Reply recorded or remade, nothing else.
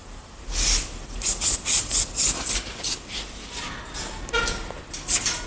recorded